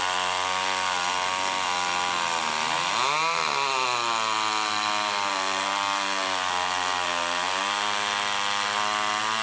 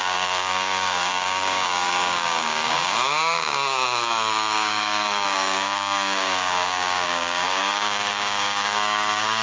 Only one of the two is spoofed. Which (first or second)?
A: second